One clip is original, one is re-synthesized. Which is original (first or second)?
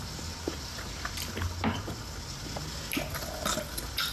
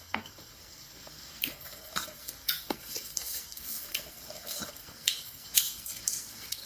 first